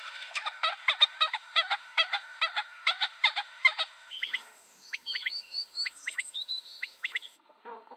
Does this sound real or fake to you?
fake